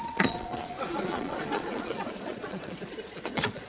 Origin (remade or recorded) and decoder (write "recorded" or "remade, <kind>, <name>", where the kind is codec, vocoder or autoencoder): remade, vocoder, Vocos